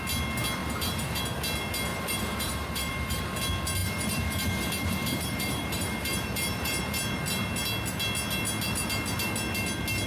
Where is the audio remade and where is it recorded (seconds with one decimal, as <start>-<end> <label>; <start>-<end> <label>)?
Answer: 0.0-0.6 recorded; 0.6-1.2 remade; 1.2-1.9 recorded; 1.9-3.2 remade; 3.2-3.8 recorded; 3.8-6.8 remade; 6.8-10.1 recorded